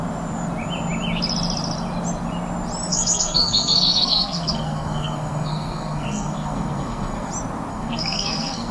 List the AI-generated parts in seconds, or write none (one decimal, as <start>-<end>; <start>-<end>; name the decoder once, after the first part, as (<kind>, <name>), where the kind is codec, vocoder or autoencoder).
2.9-7.3 (codec, SNAC); 7.7-8.7